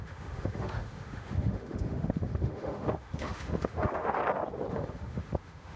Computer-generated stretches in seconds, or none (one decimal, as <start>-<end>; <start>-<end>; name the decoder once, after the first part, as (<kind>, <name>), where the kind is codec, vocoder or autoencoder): 0.0-4.2 (autoencoder, DAC-VAE); 4.7-5.8